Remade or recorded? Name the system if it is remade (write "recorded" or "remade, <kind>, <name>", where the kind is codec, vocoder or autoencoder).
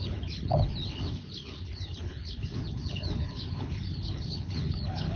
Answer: remade, codec, HILCodec